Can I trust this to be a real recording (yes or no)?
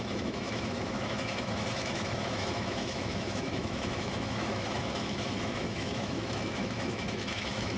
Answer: no